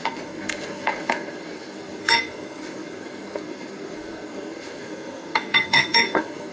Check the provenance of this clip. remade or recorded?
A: remade